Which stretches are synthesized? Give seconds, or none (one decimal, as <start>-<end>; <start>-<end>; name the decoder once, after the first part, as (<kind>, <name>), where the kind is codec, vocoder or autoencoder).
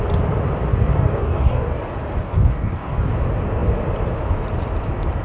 0.7-1.8 (codec, DAC); 2.2-3.1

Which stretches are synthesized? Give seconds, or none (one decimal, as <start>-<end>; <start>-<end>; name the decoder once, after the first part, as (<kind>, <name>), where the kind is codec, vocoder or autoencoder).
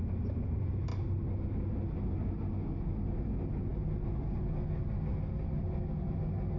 none